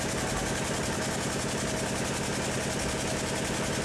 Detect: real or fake real